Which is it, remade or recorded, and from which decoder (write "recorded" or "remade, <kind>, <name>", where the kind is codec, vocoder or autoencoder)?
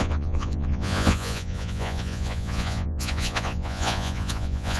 remade, vocoder, Vocos